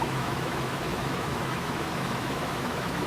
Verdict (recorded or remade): remade